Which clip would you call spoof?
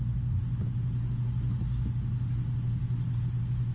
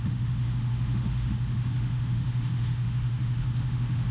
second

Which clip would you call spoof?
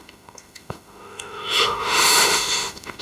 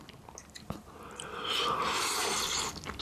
first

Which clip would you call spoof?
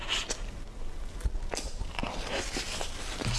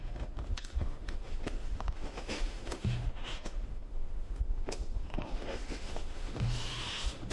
second